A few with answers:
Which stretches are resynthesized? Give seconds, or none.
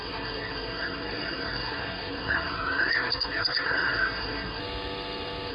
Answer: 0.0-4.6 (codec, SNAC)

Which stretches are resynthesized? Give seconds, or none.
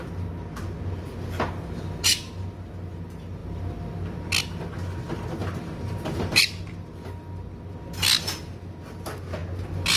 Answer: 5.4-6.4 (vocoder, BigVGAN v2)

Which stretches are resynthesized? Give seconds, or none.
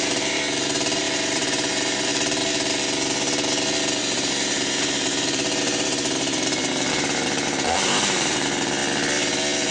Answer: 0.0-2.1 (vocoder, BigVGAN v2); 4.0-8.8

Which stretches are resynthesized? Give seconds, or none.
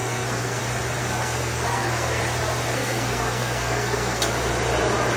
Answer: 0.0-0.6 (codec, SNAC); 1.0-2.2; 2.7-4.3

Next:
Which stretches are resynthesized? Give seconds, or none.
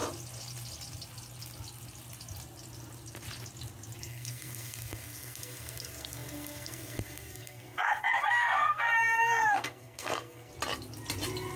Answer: 4.0-10.5 (codec, SNAC)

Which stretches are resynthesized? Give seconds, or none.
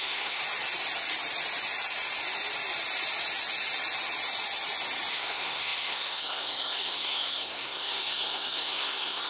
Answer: 0.0-0.4 (codec, SNAC); 5.1-9.3